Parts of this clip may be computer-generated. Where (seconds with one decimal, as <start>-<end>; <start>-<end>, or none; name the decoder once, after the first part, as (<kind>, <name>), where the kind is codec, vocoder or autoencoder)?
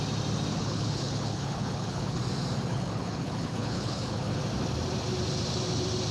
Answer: 0.5-2.2 (codec, HILCodec); 2.7-4.4